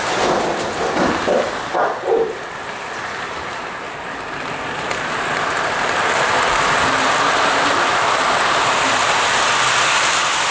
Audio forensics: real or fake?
fake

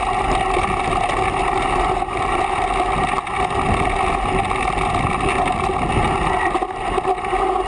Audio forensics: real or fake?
real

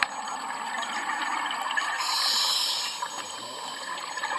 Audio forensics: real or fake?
real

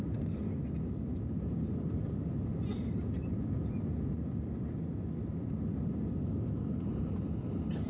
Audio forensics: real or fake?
fake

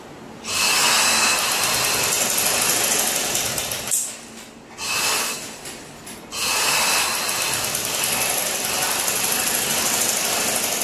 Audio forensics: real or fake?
real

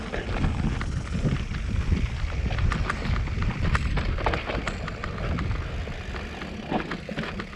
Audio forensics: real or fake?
real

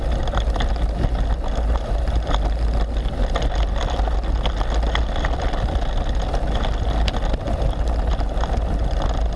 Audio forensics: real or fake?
real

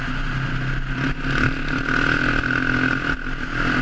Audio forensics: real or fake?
real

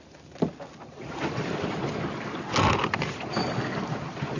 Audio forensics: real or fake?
real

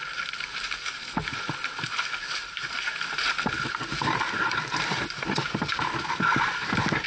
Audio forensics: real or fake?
fake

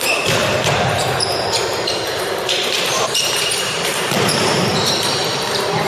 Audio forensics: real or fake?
fake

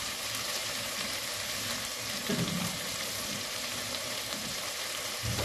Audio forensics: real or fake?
fake